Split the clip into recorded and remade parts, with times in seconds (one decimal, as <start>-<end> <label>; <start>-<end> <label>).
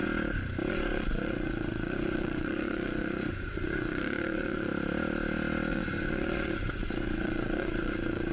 0.0-0.7 recorded; 0.7-4.7 remade; 4.7-5.7 recorded; 5.7-8.3 remade